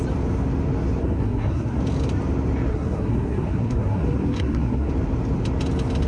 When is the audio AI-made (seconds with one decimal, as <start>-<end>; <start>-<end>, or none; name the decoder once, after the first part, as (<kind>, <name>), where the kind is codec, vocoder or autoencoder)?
1.0-1.8 (codec, SNAC); 2.7-4.9